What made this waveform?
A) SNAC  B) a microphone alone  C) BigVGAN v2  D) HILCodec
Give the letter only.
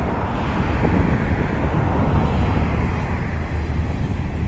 B